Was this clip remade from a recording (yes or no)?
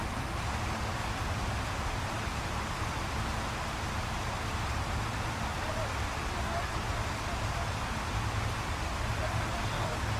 yes